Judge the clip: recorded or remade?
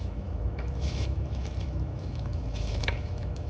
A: remade